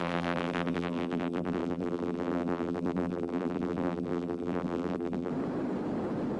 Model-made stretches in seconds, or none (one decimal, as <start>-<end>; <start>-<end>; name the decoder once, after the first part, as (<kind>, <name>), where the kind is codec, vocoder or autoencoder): 0.0-5.3 (vocoder, BigVGAN v2)